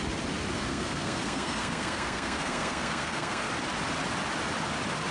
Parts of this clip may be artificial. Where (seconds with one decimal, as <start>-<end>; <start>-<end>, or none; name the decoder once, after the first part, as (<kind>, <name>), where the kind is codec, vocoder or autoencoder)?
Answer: 0.7-3.5 (codec, SNAC)